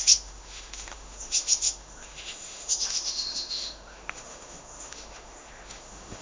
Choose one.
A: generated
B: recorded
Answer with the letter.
A